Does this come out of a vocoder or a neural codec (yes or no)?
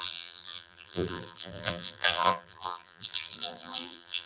yes